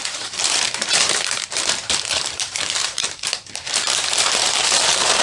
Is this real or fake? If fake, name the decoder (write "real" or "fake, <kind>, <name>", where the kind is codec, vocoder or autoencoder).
fake, vocoder, BigVGAN v2